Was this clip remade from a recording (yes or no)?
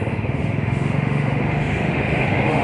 yes